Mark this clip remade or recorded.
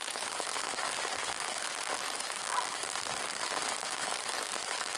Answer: remade